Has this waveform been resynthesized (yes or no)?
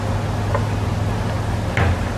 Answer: no